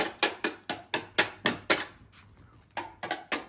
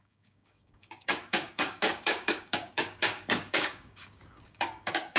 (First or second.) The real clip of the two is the first